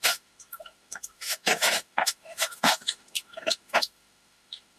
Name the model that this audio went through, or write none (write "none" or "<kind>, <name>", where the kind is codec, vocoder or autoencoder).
autoencoder, DAC-VAE